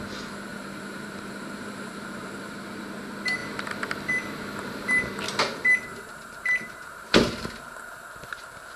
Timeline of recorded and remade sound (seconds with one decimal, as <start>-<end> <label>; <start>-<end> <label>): 0.0-0.5 recorded; 0.5-2.9 remade; 2.9-5.9 recorded; 5.9-7.8 remade; 7.8-8.8 recorded